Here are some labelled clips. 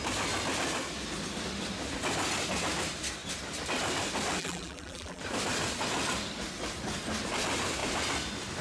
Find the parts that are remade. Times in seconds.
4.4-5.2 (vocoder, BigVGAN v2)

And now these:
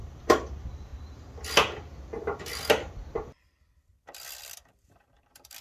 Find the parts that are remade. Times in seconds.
0.0-0.9 (vocoder, BigVGAN v2); 3.5-3.9; 4.4-5.6

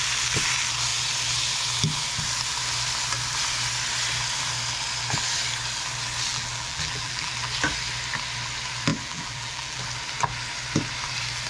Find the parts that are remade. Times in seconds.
6.3-7.3 (vocoder, BigVGAN v2); 8.9-9.8